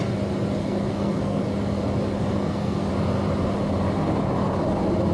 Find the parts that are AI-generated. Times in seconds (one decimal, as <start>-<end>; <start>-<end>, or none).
0.6-1.4; 2.2-2.9